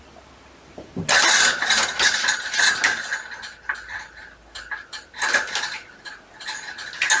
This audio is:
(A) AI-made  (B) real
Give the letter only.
B